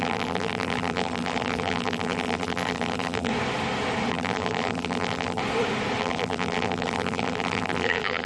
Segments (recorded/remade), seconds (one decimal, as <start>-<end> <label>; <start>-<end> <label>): 0.0-3.3 remade; 3.3-4.1 recorded; 4.1-5.4 remade; 5.4-6.0 recorded; 6.0-8.3 remade